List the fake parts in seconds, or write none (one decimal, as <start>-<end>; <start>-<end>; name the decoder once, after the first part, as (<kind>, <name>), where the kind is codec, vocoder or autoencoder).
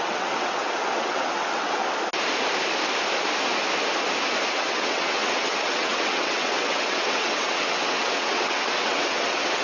0.0-1.8 (vocoder, WaveNeXt); 4.5-9.6